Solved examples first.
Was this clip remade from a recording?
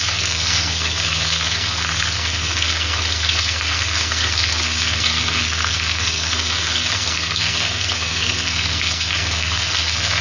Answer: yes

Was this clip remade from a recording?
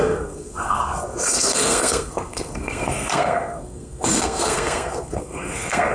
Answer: yes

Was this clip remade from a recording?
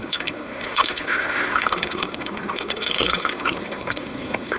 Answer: yes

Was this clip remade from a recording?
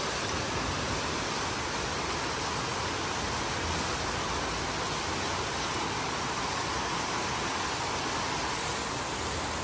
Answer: no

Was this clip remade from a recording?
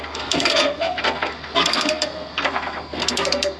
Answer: yes